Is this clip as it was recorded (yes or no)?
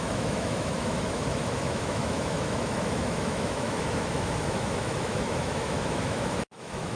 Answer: no